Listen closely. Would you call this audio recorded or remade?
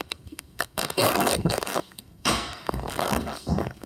remade